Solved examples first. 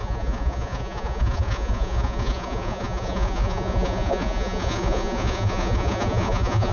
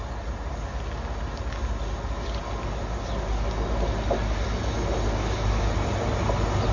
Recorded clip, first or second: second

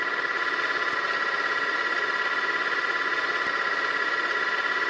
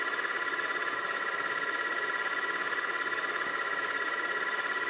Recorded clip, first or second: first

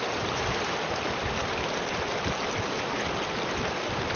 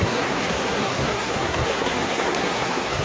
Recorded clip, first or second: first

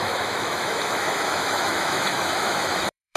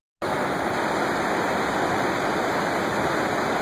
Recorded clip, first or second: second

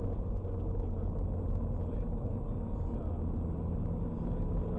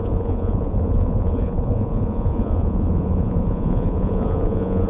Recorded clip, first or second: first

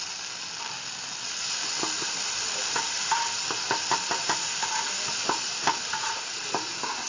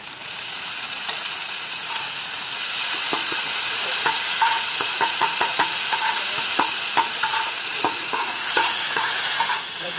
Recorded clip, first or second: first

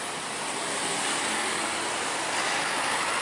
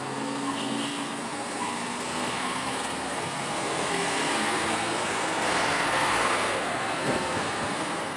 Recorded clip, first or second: first